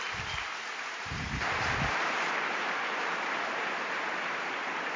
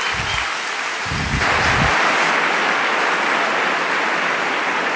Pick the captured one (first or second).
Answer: second